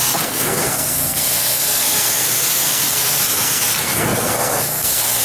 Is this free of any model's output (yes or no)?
no